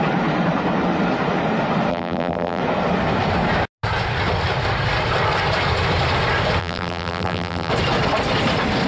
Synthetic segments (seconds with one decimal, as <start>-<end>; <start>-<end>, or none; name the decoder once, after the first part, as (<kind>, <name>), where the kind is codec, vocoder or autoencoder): 1.9-2.6 (vocoder, BigVGAN v2); 6.6-7.7